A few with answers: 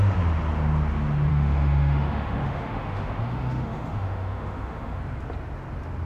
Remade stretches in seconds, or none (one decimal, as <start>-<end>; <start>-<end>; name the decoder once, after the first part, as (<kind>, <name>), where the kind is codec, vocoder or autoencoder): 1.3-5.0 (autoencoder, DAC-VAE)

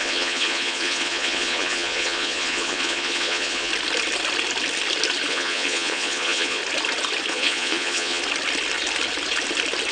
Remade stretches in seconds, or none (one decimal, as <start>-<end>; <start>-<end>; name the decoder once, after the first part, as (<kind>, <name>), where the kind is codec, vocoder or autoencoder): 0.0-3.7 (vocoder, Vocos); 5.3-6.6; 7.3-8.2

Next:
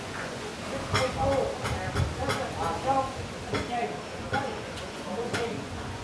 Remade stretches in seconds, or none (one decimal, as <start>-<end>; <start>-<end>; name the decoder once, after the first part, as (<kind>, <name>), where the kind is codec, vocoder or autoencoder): 0.0-0.5 (vocoder, Vocos); 4.1-6.0